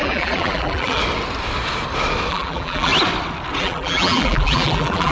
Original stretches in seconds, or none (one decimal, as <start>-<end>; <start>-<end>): 1.0-2.3; 2.9-3.6